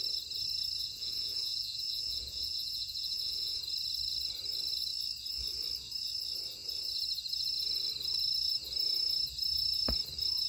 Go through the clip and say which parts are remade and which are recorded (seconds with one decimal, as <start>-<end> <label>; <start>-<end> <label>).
0.0-0.8 recorded; 0.8-3.6 remade; 3.6-10.5 recorded